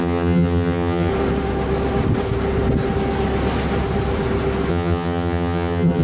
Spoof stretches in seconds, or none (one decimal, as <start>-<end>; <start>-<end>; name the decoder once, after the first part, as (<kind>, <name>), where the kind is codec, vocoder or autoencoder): 0.0-1.1 (vocoder, HiFi-GAN); 4.7-6.0